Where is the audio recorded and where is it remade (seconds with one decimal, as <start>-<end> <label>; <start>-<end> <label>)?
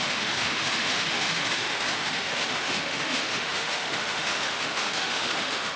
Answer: 0.0-5.8 remade